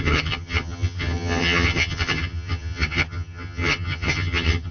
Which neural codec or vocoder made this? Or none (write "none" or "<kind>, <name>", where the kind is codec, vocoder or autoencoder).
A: vocoder, HiFi-GAN